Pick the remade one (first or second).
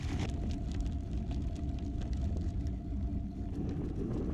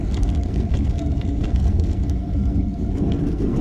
second